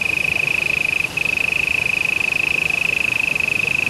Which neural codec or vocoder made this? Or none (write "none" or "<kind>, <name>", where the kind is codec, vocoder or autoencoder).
none